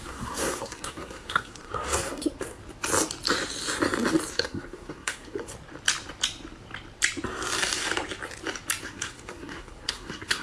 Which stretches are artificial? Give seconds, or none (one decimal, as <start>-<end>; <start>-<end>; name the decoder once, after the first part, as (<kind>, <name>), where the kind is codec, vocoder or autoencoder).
0.0-2.6 (codec, SNAC); 4.3-5.5; 8.8-10.4